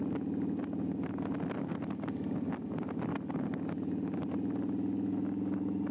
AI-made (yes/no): no